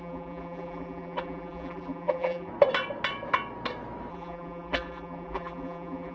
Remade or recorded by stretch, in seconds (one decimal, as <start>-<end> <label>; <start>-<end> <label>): 0.0-2.5 remade; 2.5-4.1 recorded; 4.1-6.1 remade